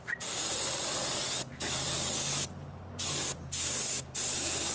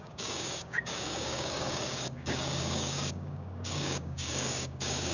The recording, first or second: first